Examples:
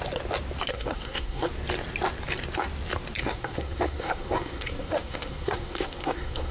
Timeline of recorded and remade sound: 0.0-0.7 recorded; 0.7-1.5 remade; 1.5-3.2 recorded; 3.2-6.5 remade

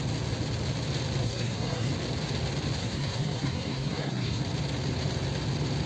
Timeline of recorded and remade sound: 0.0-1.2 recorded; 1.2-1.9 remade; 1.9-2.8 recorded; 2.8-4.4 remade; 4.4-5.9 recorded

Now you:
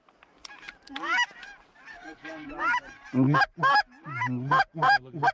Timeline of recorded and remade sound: 0.0-1.9 recorded; 1.9-2.5 remade; 2.5-5.3 recorded